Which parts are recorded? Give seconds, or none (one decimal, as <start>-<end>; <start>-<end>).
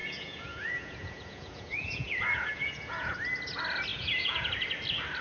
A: 3.1-3.9; 4.5-5.2